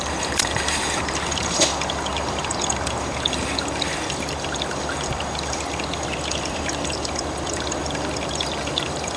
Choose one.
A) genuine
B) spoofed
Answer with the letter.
B